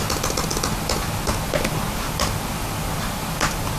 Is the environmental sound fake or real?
real